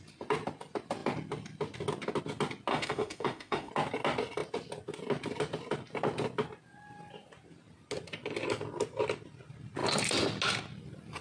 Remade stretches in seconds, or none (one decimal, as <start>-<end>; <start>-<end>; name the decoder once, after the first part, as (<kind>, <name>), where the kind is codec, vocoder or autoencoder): 2.7-3.7 (autoencoder, DAC-VAE)